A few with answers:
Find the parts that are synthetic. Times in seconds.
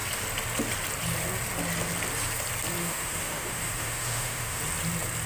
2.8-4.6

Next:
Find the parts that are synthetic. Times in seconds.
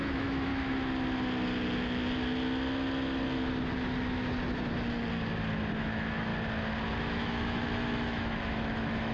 0.0-0.5; 5.8-6.3; 7.0-9.1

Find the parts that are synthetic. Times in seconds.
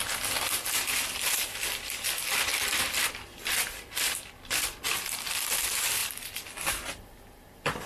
6.0-6.7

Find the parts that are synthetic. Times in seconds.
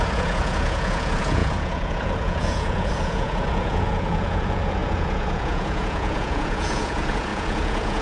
0.0-8.0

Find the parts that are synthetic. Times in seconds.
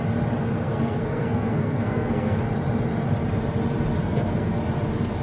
0.5-2.4; 4.0-4.6